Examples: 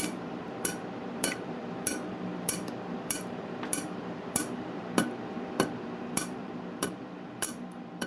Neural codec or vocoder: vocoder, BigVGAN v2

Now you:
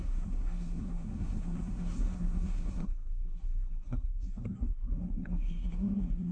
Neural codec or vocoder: codec, SNAC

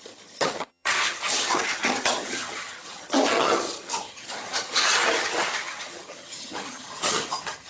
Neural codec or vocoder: vocoder, HiFi-GAN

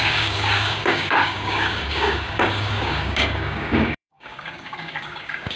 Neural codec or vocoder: codec, DAC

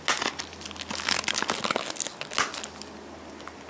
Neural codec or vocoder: none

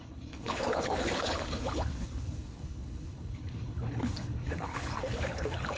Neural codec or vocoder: codec, HILCodec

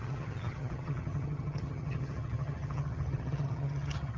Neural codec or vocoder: vocoder, HiFi-GAN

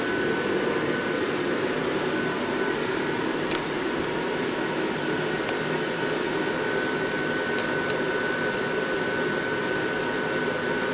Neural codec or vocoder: none